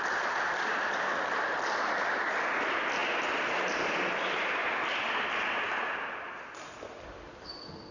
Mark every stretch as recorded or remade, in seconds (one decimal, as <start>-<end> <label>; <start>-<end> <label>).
0.0-7.9 recorded